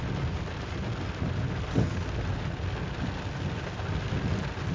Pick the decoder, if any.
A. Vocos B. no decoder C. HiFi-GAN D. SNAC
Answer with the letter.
B